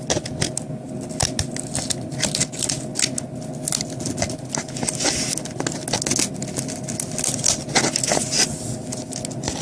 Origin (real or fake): real